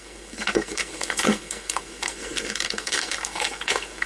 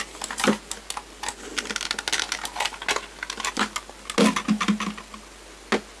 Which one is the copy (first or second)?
first